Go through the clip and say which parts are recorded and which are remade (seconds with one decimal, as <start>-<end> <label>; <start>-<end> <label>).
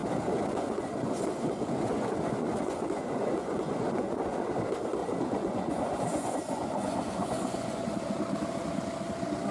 0.0-4.5 remade; 4.5-5.0 recorded; 5.0-7.8 remade; 7.8-9.5 recorded